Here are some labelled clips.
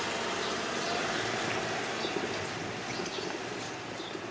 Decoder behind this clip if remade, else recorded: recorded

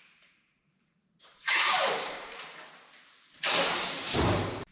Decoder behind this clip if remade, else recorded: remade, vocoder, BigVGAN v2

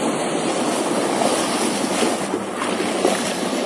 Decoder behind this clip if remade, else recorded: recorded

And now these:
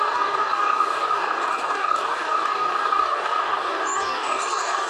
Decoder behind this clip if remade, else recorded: remade, codec, DAC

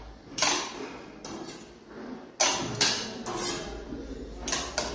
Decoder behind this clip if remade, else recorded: recorded